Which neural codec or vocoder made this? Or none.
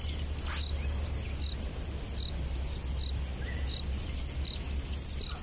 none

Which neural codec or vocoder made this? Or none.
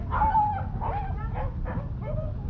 none